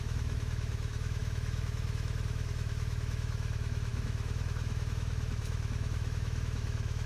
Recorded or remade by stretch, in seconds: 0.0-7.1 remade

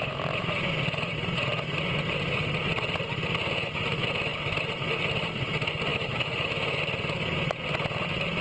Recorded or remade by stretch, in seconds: 0.0-5.9 recorded; 5.9-6.8 remade; 6.8-8.4 recorded

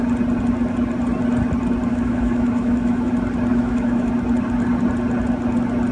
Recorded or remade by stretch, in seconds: 0.0-1.9 recorded; 1.9-3.1 remade; 3.1-3.5 recorded; 3.5-4.1 remade; 4.1-5.9 recorded

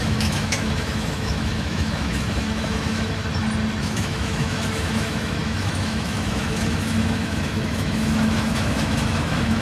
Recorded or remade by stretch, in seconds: 0.0-3.2 remade; 3.2-3.8 recorded; 3.8-9.6 remade

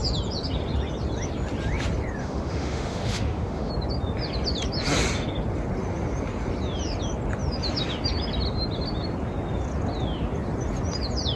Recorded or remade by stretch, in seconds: 0.0-2.2 recorded; 2.2-3.7 remade; 3.7-11.4 recorded

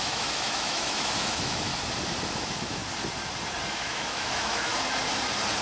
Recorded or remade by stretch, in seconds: 0.0-1.7 remade; 1.7-2.3 recorded; 2.3-2.8 remade; 2.8-3.7 recorded; 3.7-4.7 remade; 4.7-5.6 recorded

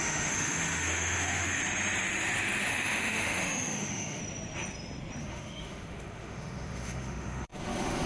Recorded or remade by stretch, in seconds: 0.0-1.6 remade; 1.6-2.7 recorded; 2.7-4.2 remade; 4.2-5.2 recorded; 5.2-8.1 remade

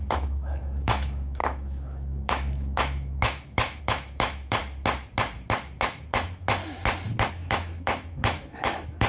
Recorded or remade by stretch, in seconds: 0.0-4.6 remade; 4.6-5.9 recorded; 5.9-6.6 remade; 6.6-7.3 recorded; 7.3-9.1 remade